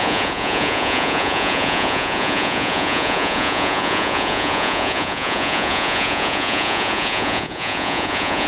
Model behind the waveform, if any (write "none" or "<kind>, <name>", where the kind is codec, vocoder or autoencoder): vocoder, Vocos